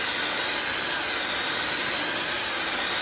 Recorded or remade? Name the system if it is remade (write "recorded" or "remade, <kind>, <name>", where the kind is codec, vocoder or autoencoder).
recorded